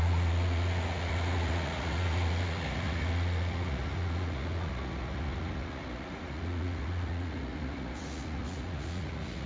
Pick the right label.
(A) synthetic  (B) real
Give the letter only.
A